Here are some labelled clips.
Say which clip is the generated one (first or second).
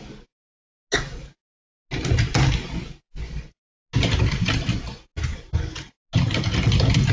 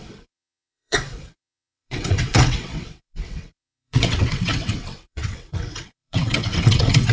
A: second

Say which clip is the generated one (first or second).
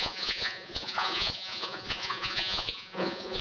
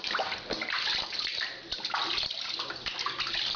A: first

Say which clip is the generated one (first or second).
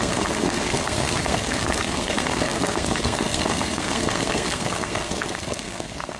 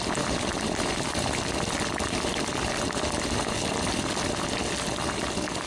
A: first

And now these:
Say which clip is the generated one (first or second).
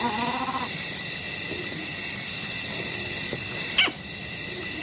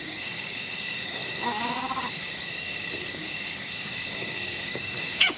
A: second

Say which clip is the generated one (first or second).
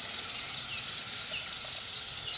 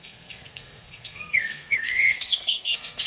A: second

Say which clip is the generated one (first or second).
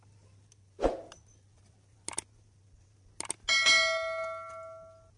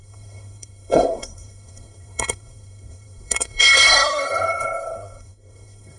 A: second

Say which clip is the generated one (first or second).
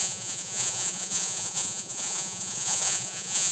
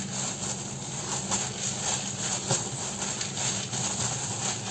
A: first